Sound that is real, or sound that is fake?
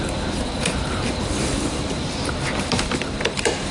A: fake